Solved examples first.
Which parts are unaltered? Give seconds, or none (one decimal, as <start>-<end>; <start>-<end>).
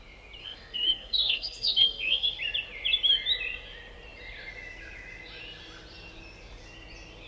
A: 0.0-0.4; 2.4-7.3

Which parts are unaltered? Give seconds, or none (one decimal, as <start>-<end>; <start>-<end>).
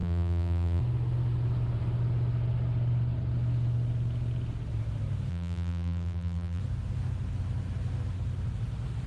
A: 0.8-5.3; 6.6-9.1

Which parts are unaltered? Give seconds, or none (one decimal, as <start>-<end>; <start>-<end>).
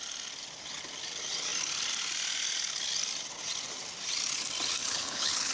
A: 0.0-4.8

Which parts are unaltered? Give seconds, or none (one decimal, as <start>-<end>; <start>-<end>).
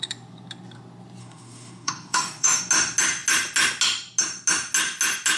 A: 0.0-1.2; 2.6-5.4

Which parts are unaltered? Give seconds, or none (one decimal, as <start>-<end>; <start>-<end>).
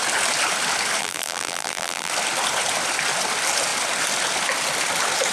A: 0.0-1.0; 2.1-5.3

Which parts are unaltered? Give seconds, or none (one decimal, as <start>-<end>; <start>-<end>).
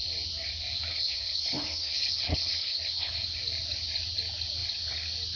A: 0.0-0.9; 3.1-5.4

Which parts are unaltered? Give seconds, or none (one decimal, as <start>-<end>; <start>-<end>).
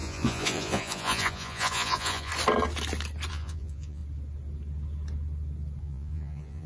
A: 2.3-3.3; 4.0-5.8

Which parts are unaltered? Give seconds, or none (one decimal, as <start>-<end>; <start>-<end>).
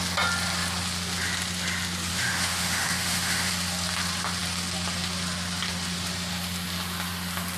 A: 0.0-2.1; 3.5-7.6